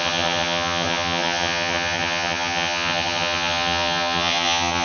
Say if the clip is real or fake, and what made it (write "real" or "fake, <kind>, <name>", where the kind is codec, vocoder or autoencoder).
fake, vocoder, HiFi-GAN